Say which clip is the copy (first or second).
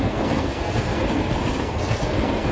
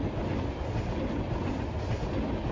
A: first